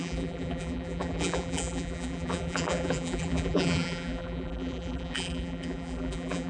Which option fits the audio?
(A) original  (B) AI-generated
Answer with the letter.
B